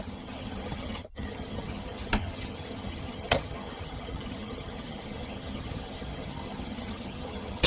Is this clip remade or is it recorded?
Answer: remade